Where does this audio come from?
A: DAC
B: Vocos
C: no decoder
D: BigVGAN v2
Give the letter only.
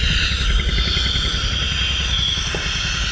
C